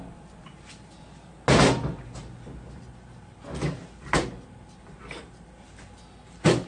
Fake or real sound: real